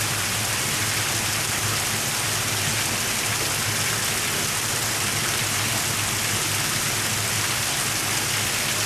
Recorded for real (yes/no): yes